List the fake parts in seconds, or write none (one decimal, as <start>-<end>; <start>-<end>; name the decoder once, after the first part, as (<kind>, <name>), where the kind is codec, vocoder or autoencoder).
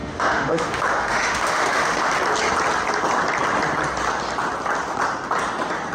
0.0-2.1 (autoencoder, DAC-VAE)